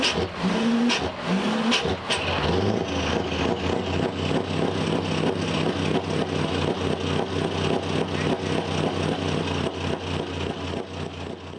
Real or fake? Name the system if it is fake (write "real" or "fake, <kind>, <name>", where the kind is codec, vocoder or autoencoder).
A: real